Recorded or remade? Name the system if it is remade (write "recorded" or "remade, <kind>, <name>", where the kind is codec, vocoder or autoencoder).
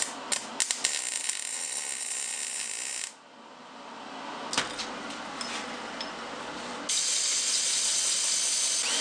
recorded